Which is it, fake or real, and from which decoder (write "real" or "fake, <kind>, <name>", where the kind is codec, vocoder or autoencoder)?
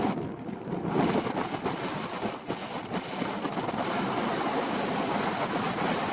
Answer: real